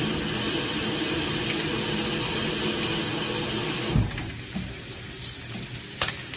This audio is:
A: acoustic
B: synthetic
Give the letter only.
A